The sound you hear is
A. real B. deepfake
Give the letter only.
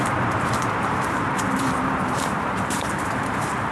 B